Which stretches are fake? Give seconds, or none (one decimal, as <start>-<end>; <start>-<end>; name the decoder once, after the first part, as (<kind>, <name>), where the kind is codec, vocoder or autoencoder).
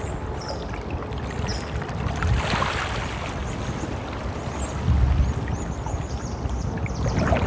none